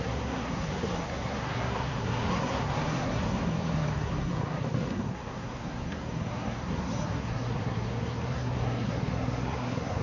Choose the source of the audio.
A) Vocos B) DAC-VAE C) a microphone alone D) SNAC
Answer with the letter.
D